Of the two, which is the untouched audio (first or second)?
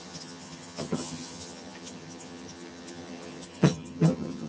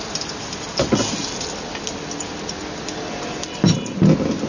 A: second